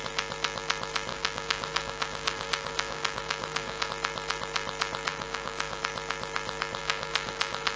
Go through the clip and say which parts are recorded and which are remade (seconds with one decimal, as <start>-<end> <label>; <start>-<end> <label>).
0.0-1.1 recorded; 1.1-3.9 remade; 3.9-5.1 recorded; 5.1-5.8 remade; 5.8-6.8 recorded; 6.8-7.8 remade